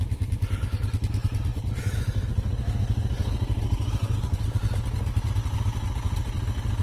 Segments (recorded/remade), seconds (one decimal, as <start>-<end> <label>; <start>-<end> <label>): 0.0-6.8 recorded